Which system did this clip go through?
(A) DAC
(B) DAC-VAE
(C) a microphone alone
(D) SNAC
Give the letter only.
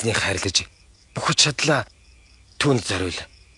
A